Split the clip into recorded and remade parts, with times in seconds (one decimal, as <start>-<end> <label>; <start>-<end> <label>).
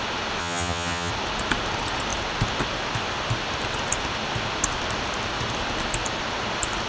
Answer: 0.0-0.4 recorded; 0.4-1.1 remade; 1.1-6.9 recorded